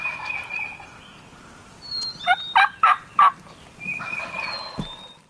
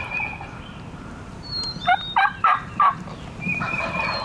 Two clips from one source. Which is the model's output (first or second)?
second